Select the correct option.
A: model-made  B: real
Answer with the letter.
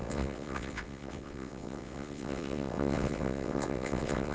A